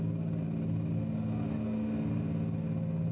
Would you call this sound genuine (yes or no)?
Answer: yes